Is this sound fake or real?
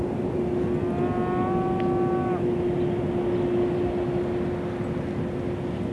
real